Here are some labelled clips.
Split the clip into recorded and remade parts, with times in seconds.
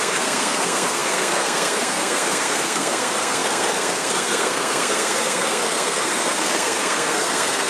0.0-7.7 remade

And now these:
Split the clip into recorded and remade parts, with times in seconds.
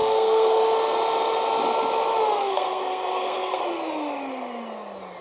0.0-0.6 remade; 0.6-2.4 recorded; 2.4-3.6 remade; 3.6-5.2 recorded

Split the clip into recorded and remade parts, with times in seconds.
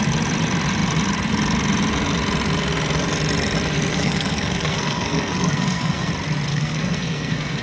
0.0-3.9 recorded; 3.9-6.1 remade; 6.1-6.5 recorded; 6.5-7.6 remade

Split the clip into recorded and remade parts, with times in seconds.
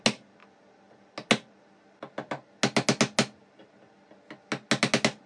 0.0-5.3 recorded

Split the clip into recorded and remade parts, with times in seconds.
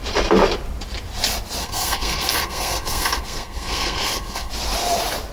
0.0-1.6 recorded; 1.6-4.5 remade; 4.5-5.3 recorded